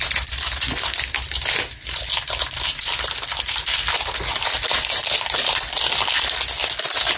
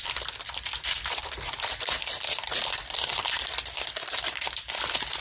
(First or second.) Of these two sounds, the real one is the first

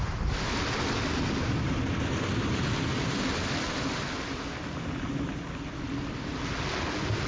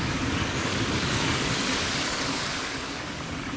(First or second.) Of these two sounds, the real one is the first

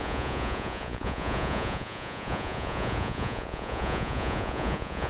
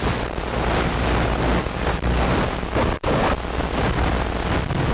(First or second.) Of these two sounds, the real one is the second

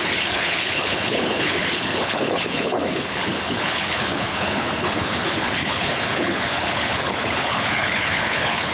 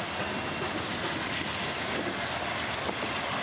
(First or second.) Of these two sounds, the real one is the second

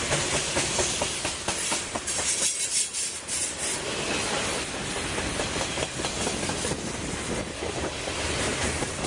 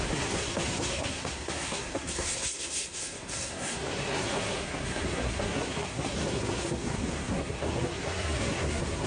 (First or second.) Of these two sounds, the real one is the first